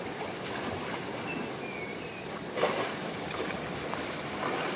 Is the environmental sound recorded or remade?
recorded